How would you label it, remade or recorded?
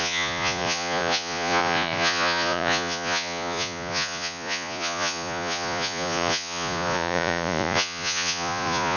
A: remade